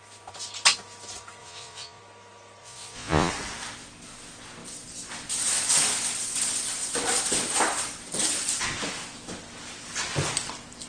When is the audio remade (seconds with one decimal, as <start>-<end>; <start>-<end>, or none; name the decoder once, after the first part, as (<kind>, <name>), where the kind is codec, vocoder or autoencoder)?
1.4-2.0 (vocoder, Vocos); 2.6-3.3